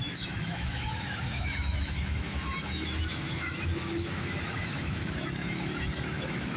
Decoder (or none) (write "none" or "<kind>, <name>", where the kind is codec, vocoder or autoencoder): autoencoder, DAC-VAE